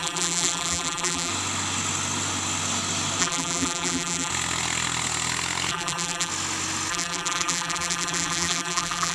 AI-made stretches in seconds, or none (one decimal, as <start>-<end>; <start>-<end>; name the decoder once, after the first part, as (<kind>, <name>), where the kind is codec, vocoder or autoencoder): 0.0-1.3 (vocoder, BigVGAN v2); 3.2-4.3; 5.7-6.3; 6.9-9.1